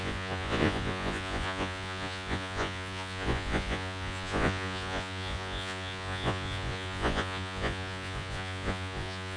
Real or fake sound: fake